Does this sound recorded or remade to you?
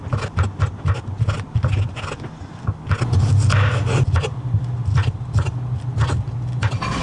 recorded